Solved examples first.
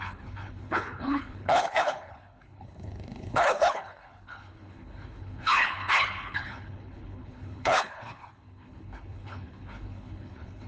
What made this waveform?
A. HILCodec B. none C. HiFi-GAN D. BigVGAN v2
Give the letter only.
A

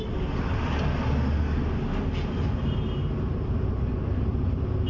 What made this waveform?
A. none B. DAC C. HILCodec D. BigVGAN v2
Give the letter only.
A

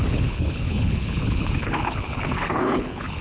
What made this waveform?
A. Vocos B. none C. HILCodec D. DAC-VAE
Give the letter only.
C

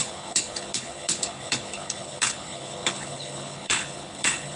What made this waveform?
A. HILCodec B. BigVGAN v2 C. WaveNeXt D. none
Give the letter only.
A